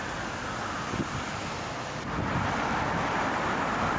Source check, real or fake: real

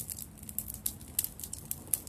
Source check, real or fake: real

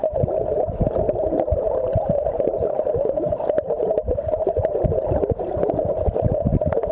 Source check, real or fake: real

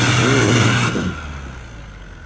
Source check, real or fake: real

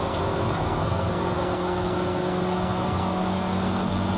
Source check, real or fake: fake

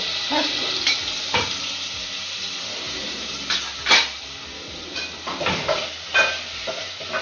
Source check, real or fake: real